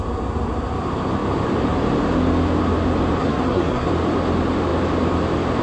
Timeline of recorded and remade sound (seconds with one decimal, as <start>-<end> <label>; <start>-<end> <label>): 0.0-3.2 recorded; 3.2-3.9 remade; 3.9-5.6 recorded